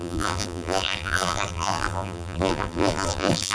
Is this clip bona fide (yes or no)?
no